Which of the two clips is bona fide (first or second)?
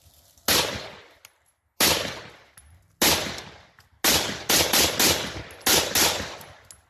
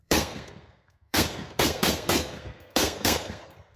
first